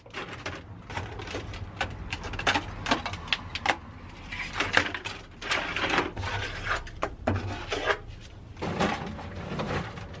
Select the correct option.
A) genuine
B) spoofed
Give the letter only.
A